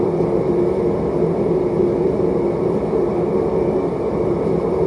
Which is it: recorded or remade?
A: recorded